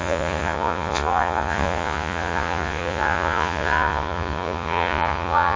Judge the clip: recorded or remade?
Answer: remade